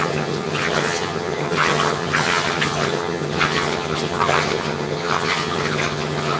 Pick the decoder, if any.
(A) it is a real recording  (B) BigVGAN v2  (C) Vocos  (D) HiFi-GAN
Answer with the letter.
D